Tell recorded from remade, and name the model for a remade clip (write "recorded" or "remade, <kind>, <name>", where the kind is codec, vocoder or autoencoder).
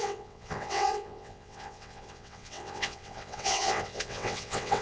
remade, vocoder, WaveNeXt